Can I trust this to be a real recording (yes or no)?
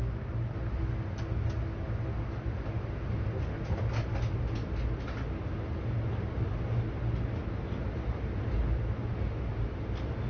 yes